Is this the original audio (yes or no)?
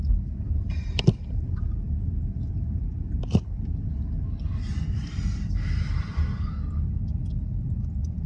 yes